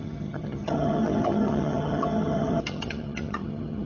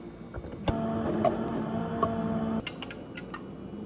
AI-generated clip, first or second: first